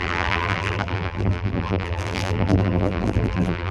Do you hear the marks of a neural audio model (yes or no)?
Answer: yes